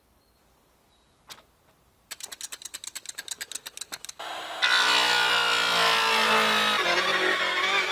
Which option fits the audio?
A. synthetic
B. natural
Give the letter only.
B